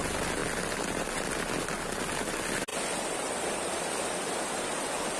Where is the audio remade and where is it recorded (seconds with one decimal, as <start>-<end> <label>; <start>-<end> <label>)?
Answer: 0.0-2.7 recorded; 2.7-4.2 remade; 4.2-5.2 recorded